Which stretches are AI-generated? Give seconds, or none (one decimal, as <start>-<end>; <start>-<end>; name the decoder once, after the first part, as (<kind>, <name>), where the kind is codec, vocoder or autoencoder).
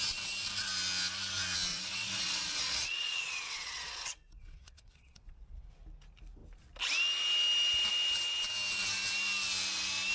1.7-5.7 (vocoder, WaveNeXt)